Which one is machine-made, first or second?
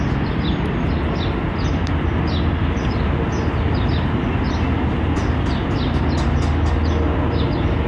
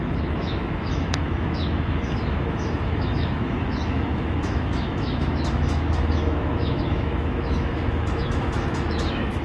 second